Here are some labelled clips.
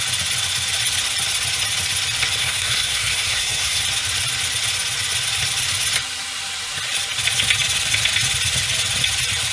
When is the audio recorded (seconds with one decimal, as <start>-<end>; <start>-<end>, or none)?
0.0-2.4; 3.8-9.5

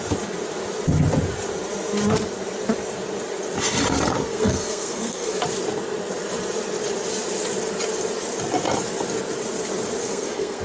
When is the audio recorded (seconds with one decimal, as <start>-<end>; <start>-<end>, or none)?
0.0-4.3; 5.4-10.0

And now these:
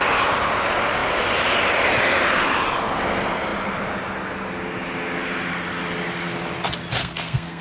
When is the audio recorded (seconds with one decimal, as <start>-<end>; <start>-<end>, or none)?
0.0-7.0